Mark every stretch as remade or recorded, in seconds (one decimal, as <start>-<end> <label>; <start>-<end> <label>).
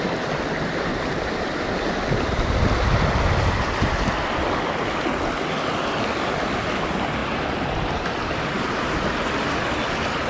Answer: 0.0-0.9 recorded; 0.9-1.7 remade; 1.7-10.3 recorded